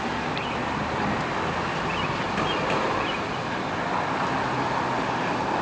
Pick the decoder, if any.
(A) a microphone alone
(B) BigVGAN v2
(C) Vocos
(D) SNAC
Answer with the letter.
A